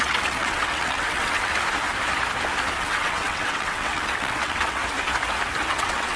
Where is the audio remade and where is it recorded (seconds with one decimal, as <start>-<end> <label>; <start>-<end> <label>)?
0.0-1.5 remade; 1.5-2.8 recorded; 2.8-4.8 remade; 4.8-5.7 recorded; 5.7-6.2 remade